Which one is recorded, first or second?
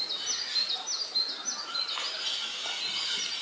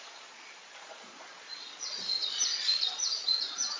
first